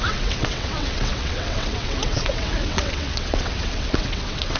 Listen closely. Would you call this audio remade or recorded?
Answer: remade